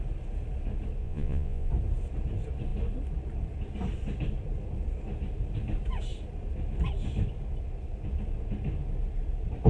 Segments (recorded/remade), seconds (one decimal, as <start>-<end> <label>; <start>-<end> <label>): 0.0-1.0 recorded; 1.0-1.7 remade; 1.7-9.7 recorded